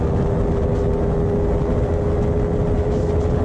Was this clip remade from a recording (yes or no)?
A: no